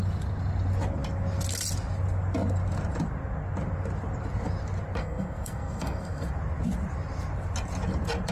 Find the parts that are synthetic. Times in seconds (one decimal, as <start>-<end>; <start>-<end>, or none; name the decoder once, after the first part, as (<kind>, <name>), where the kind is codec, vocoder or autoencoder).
5.0-6.3 (codec, SNAC)